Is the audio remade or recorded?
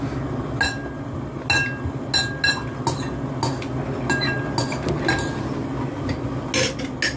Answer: recorded